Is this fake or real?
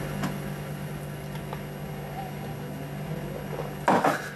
real